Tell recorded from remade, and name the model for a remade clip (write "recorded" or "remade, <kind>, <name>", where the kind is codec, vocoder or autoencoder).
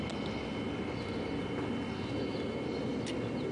recorded